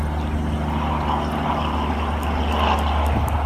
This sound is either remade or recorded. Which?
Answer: recorded